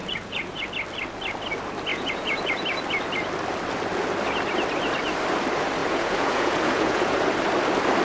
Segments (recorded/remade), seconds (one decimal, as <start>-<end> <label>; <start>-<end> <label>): 0.0-0.7 remade; 0.7-1.9 recorded; 1.9-2.6 remade; 2.6-5.8 recorded; 5.8-7.3 remade; 7.3-8.0 recorded